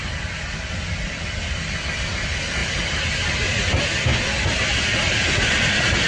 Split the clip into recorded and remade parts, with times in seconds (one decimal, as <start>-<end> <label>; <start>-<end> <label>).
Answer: 0.0-6.1 recorded